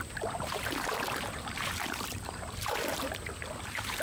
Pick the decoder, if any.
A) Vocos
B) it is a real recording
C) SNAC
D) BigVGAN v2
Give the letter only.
D